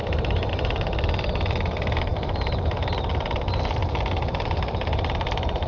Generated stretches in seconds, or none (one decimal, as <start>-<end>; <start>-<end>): none